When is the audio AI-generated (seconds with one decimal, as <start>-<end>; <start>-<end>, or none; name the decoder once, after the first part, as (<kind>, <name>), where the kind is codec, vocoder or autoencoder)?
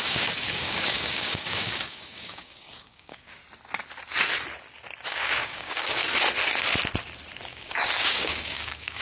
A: 0.0-3.4 (codec, DAC); 5.1-6.0; 7.5-9.0